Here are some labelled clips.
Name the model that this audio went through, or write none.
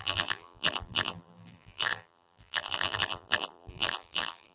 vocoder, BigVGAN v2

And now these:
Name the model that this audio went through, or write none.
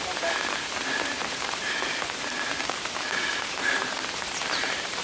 vocoder, BigVGAN v2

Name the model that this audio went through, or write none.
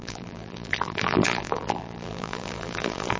vocoder, BigVGAN v2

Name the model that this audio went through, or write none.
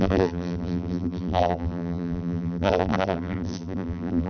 vocoder, BigVGAN v2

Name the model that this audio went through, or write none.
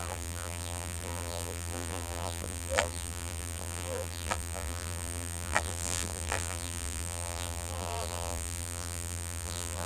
vocoder, BigVGAN v2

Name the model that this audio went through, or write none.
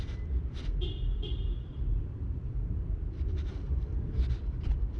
vocoder, BigVGAN v2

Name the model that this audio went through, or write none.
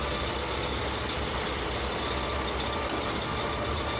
none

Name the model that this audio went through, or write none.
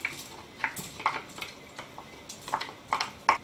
none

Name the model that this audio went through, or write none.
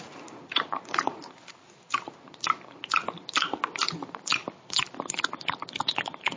vocoder, BigVGAN v2